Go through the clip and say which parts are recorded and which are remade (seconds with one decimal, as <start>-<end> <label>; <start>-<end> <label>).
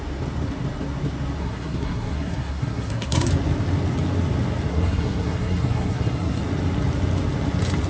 0.0-1.4 recorded; 1.4-3.3 remade; 3.3-4.7 recorded; 4.7-6.4 remade; 6.4-7.9 recorded